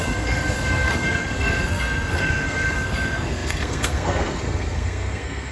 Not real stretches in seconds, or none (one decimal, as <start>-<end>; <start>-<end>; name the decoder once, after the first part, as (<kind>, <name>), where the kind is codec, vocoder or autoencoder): 0.0-5.5 (codec, SNAC)